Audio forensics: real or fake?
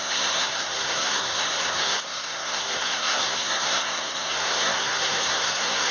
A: fake